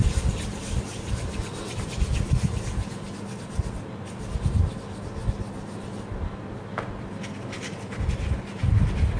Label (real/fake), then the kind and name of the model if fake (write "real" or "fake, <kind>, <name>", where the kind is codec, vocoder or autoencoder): real